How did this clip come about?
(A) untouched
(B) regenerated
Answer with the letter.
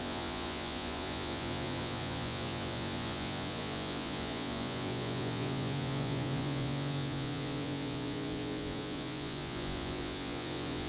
B